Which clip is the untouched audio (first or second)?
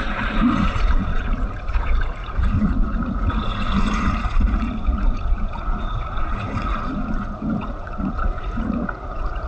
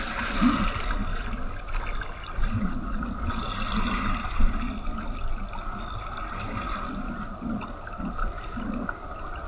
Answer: second